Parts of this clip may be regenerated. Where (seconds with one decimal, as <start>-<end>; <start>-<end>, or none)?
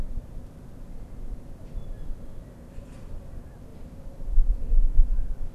0.0-1.8; 2.4-5.5